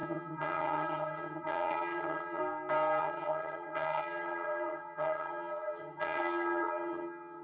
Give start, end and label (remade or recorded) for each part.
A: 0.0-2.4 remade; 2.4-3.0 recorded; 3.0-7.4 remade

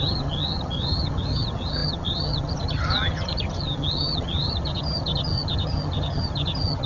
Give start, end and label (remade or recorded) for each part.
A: 0.0-6.9 remade

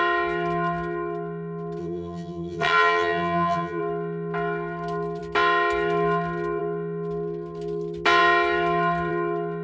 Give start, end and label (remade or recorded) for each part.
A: 0.0-1.8 recorded; 1.8-3.8 remade; 3.8-9.6 recorded

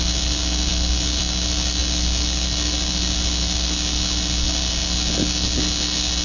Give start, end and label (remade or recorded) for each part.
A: 0.0-6.2 recorded